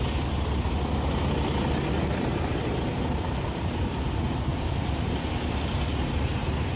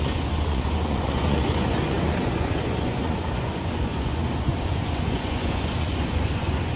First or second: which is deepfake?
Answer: second